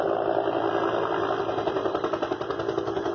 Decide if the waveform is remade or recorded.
recorded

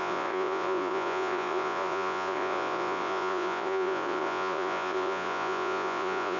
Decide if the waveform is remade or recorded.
remade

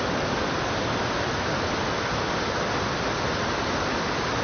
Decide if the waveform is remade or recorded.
recorded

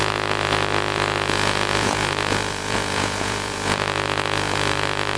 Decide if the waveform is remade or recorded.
remade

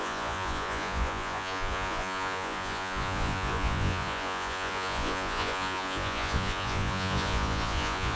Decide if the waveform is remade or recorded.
remade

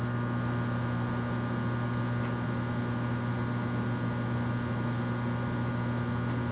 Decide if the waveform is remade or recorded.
recorded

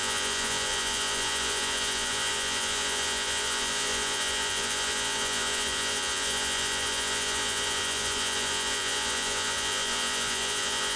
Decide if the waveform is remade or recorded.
remade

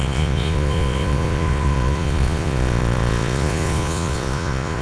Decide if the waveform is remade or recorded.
remade